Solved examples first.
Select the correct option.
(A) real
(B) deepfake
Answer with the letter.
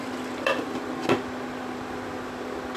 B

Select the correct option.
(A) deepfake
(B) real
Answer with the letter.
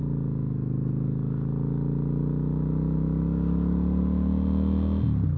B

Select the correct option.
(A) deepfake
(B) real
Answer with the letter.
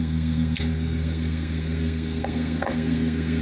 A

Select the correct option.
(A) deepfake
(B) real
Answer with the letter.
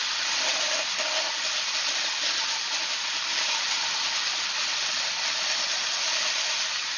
B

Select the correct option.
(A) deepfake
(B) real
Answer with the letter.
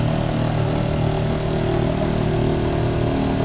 B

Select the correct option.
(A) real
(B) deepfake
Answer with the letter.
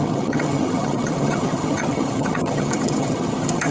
B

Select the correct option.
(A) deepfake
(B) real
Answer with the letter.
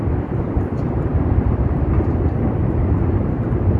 B